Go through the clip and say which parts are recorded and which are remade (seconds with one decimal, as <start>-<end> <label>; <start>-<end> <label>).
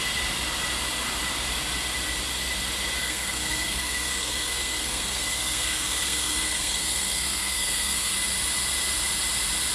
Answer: 0.0-3.0 recorded; 3.0-8.1 remade; 8.1-9.7 recorded